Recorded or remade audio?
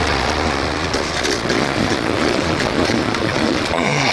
remade